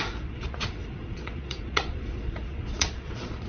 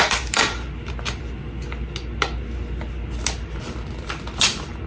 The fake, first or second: first